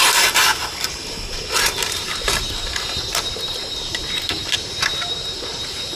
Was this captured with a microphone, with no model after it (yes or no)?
no